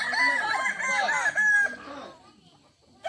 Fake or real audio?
real